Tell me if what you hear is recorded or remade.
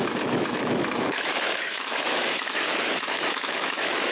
remade